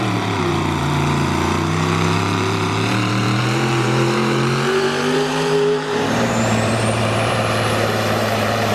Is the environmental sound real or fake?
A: fake